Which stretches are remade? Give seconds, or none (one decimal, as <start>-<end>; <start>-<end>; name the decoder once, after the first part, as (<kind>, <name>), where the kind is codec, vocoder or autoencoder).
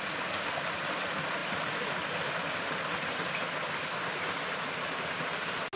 none